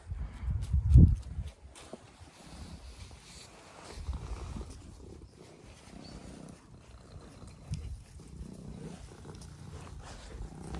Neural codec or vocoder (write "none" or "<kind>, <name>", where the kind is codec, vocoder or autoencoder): none